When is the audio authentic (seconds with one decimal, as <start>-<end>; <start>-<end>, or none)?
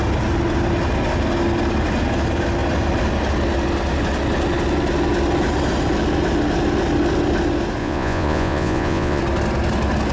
0.0-7.8; 9.2-10.1